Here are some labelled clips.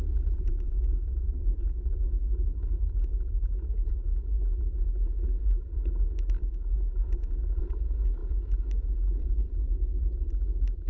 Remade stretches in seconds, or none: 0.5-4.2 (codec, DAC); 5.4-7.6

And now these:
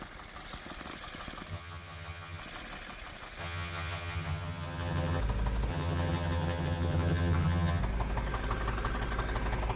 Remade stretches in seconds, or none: 1.5-2.4 (vocoder, HiFi-GAN); 3.4-5.2; 5.7-7.8